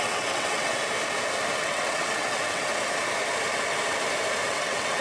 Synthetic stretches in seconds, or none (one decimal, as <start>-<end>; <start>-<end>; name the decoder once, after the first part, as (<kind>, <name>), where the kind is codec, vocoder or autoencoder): 0.0-0.8 (vocoder, WaveNeXt); 1.6-2.7; 4.5-5.0